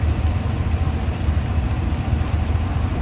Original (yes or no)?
no